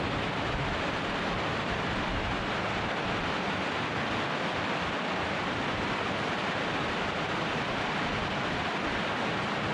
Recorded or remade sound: recorded